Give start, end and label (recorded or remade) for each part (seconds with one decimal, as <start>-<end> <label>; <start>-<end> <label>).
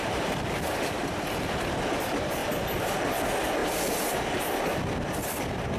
0.0-5.8 recorded